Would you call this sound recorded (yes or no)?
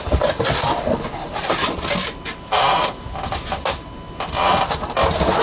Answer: yes